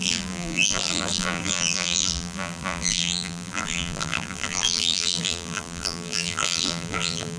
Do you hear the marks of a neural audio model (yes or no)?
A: yes